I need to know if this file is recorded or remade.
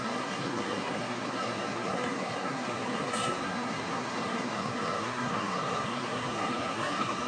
remade